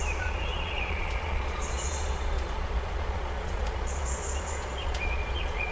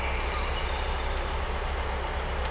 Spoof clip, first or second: first